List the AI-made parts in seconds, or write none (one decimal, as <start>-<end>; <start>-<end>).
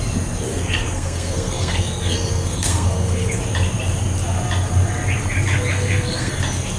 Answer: 0.5-3.4; 5.7-6.3